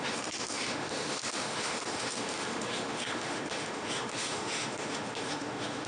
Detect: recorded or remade remade